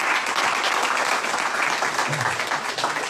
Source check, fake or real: real